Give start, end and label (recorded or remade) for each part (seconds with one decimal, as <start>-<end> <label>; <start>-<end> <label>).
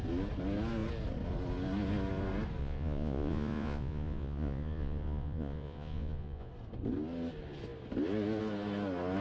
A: 0.0-2.6 recorded; 2.6-6.5 remade; 6.5-9.2 recorded